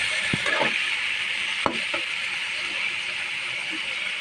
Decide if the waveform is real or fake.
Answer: fake